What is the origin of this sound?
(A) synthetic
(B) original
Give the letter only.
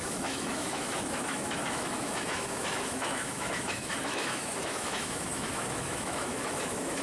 A